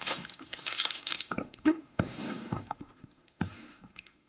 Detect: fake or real fake